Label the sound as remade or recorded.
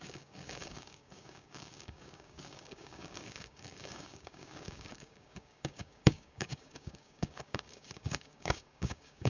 remade